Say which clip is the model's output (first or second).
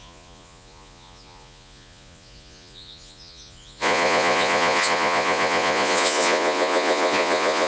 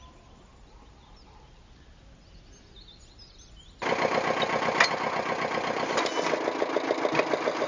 first